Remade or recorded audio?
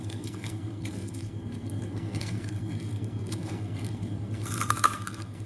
remade